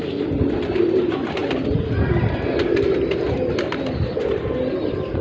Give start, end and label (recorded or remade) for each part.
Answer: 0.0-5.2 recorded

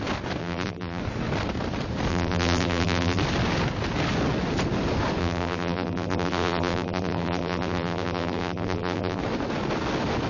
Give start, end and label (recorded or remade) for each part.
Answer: 0.0-0.4 recorded; 0.4-1.0 remade; 1.0-2.1 recorded; 2.1-3.2 remade; 3.2-5.2 recorded; 5.2-9.2 remade; 9.2-10.3 recorded

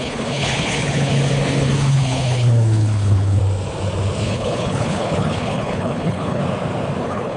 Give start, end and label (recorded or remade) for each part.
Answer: 0.0-1.2 remade; 1.2-1.9 recorded; 1.9-3.4 remade; 3.4-4.2 recorded; 4.2-6.4 remade; 6.4-7.0 recorded; 7.0-7.4 remade

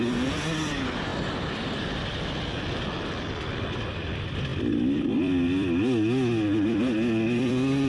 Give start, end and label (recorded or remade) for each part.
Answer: 0.0-4.5 recorded; 4.5-7.9 remade